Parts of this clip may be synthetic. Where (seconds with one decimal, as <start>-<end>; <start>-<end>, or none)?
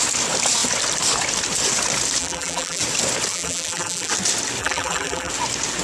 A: 2.2-2.8; 3.3-4.1; 4.6-5.3